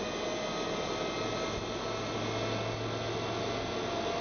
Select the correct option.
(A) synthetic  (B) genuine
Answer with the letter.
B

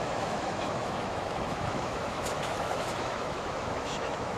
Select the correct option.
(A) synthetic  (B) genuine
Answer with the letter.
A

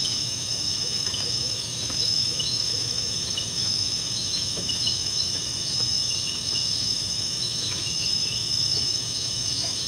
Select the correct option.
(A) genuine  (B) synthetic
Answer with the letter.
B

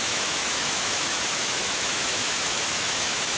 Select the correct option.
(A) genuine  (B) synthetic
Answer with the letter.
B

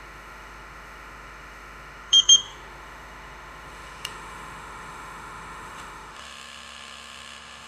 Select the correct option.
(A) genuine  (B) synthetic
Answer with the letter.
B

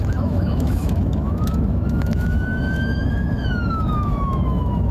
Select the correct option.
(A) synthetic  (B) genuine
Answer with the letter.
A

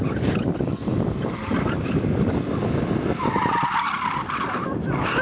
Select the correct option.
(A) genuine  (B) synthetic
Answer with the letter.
A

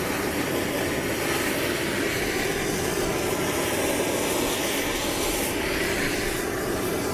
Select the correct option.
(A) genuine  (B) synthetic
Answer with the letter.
A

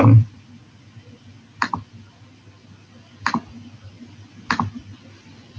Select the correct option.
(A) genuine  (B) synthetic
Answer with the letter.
A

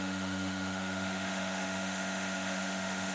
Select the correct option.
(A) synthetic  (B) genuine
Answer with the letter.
A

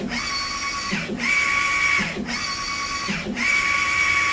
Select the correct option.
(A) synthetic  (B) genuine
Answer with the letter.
B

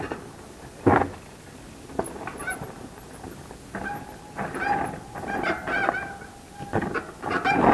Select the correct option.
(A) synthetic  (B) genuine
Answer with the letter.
B